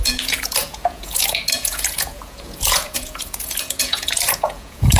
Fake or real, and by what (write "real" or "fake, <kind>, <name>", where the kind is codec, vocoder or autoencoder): fake, vocoder, Vocos